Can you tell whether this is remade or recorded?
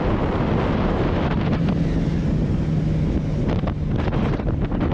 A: recorded